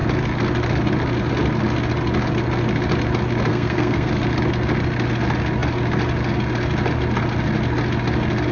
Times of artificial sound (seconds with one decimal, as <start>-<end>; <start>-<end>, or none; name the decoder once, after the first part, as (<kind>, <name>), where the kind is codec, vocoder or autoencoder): 3.5-4.1 (codec, SNAC)